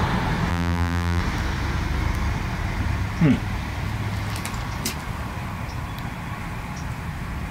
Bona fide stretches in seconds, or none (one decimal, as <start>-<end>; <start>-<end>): 0.0-0.5; 1.2-7.5